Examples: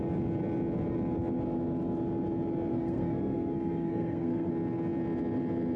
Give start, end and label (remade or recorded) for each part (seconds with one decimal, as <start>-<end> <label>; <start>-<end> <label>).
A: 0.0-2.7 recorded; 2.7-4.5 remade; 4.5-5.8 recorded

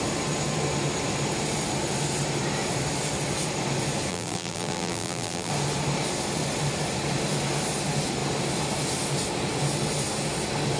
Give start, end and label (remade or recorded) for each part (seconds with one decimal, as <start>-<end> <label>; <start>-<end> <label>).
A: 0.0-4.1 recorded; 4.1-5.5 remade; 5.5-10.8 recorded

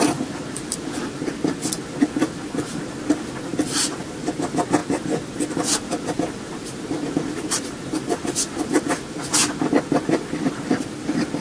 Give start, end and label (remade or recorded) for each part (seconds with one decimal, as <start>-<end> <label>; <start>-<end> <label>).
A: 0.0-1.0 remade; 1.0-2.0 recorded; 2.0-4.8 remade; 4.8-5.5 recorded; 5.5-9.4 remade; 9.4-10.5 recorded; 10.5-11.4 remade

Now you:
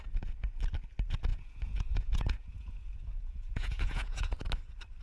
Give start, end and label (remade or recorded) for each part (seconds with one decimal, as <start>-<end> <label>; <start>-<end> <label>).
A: 0.0-1.3 recorded; 1.3-4.3 remade; 4.3-5.0 recorded

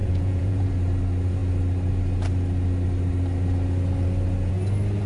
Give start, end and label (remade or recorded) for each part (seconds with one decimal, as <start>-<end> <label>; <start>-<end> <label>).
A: 0.0-0.7 remade; 0.7-5.1 recorded

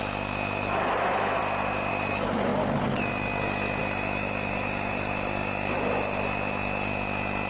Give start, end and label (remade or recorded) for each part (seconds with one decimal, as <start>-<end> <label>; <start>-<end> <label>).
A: 0.0-1.4 remade; 1.4-1.9 recorded; 1.9-2.5 remade; 2.5-3.8 recorded; 3.8-6.9 remade; 6.9-7.5 recorded

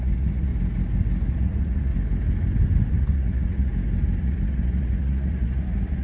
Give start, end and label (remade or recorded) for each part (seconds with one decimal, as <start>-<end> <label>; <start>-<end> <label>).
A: 0.0-0.5 remade; 0.5-1.3 recorded; 1.3-1.9 remade; 1.9-2.9 recorded; 2.9-3.7 remade; 3.7-4.2 recorded; 4.2-6.0 remade